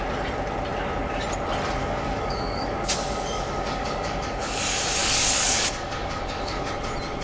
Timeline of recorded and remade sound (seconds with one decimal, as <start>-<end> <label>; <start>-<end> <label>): 0.0-1.8 recorded; 1.8-4.6 remade; 4.6-5.0 recorded; 5.0-6.7 remade; 6.7-7.2 recorded